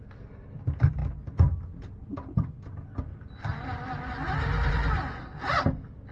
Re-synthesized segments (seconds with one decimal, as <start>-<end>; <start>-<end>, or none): none